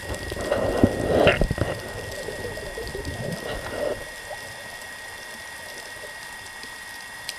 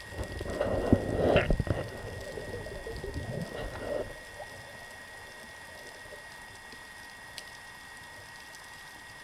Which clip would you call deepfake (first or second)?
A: first